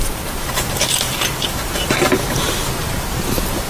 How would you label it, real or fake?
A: fake